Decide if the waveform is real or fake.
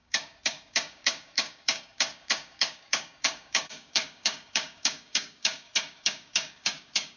fake